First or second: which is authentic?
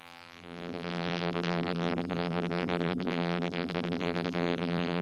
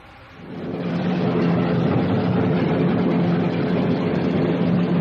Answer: second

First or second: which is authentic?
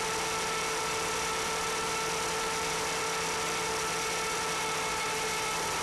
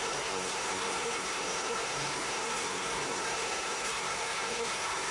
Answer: first